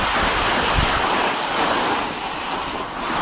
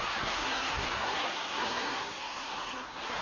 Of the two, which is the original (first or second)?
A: first